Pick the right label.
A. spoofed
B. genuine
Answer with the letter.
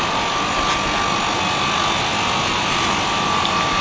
B